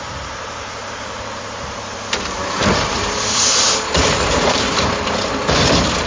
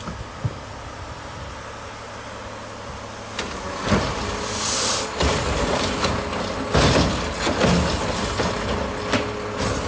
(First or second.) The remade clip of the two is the first